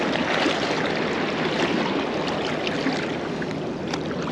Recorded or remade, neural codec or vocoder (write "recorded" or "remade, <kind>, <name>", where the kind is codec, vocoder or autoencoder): recorded